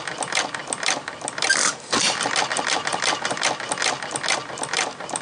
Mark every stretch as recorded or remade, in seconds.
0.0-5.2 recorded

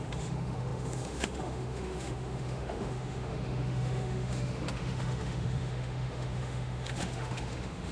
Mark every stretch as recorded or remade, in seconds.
0.0-7.9 remade

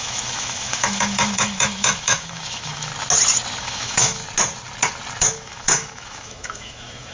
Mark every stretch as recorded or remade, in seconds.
0.0-2.9 remade; 2.9-3.6 recorded; 3.6-4.2 remade; 4.2-5.2 recorded; 5.2-7.1 remade

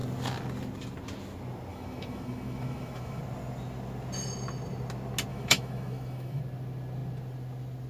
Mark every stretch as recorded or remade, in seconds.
0.0-1.7 recorded; 1.7-3.2 remade; 3.2-5.3 recorded; 5.3-6.4 remade; 6.4-7.9 recorded

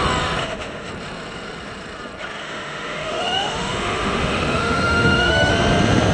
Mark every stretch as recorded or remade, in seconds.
0.0-0.4 recorded; 0.4-0.9 remade; 0.9-2.4 recorded; 2.4-5.5 remade; 5.5-6.1 recorded

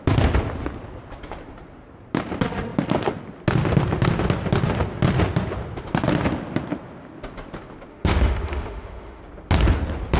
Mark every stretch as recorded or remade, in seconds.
0.0-7.9 recorded; 7.9-9.2 remade; 9.2-10.2 recorded

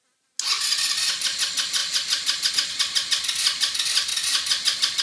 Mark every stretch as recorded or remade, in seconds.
0.0-5.0 recorded

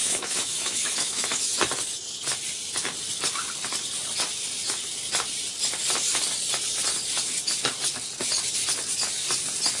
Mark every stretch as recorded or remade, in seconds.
0.0-1.5 remade; 1.5-9.8 recorded